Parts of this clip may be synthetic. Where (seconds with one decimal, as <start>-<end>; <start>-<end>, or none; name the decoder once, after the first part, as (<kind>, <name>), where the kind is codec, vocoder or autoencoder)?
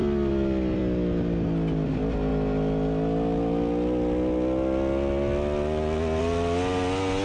none